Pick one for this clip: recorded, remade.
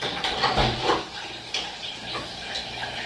recorded